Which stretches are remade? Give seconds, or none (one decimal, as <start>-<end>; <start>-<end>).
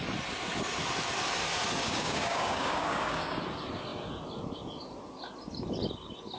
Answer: 1.8-3.4